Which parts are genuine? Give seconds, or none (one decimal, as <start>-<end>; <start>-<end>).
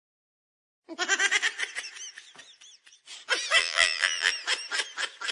0.0-3.6; 4.3-5.3